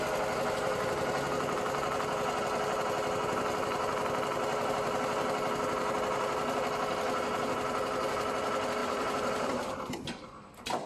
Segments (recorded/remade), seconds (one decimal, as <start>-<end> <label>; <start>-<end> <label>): 0.0-8.8 recorded; 8.8-9.5 remade; 9.5-10.9 recorded